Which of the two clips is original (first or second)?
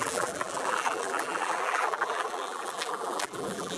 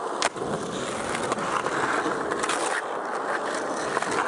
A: second